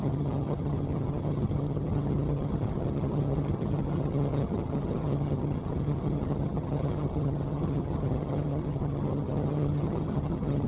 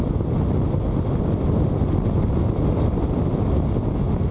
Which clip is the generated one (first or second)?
first